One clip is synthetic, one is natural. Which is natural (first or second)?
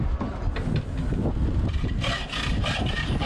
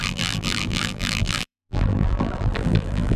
first